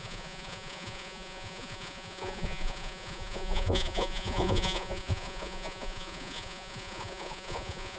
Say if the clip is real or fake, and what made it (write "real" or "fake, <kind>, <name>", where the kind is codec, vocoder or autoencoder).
fake, vocoder, Vocos